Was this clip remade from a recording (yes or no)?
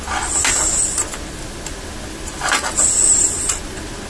no